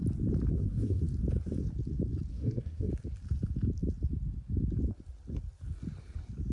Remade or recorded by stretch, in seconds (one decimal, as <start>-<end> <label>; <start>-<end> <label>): 0.0-0.5 recorded; 0.5-1.0 remade; 1.0-2.3 recorded; 2.3-2.9 remade; 2.9-6.5 recorded

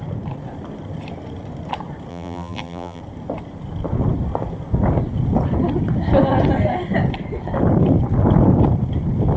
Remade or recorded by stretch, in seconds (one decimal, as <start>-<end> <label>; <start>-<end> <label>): 0.0-2.1 recorded; 2.1-3.0 remade; 3.0-9.4 recorded

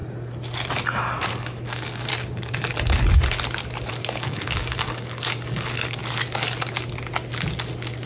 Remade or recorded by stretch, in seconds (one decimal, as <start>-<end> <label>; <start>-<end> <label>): 0.0-1.4 recorded; 1.4-2.1 remade; 2.1-3.9 recorded; 3.9-6.0 remade; 6.0-8.1 recorded